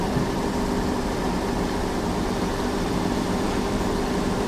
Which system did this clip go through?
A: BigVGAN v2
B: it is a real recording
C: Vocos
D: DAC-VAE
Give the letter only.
A